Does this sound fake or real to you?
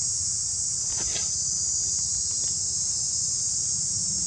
real